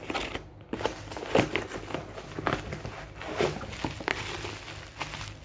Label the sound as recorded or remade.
recorded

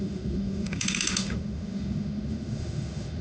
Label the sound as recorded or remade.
remade